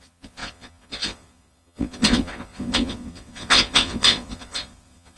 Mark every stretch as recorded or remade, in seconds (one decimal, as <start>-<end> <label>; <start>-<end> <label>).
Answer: 0.0-5.2 remade